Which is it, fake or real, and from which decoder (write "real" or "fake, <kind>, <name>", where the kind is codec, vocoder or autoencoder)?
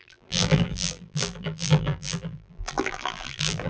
fake, vocoder, BigVGAN v2